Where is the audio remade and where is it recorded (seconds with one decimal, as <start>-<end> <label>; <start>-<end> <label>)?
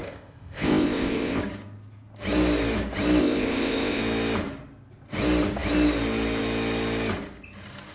0.0-1.4 remade; 1.4-3.2 recorded; 3.2-4.0 remade; 4.0-7.9 recorded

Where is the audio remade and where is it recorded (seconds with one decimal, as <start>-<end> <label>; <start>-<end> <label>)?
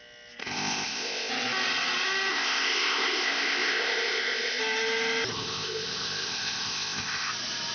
0.0-0.4 recorded; 0.4-1.3 remade; 1.3-2.3 recorded; 2.3-4.6 remade; 4.6-5.3 recorded; 5.3-7.3 remade; 7.3-7.7 recorded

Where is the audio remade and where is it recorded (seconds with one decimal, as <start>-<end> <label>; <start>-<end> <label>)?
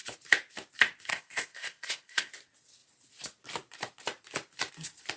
0.0-1.1 recorded; 1.1-2.3 remade; 2.3-5.2 recorded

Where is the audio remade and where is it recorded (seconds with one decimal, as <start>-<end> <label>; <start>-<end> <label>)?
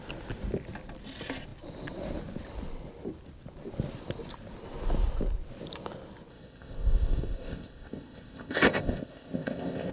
0.0-6.3 recorded; 6.3-9.9 remade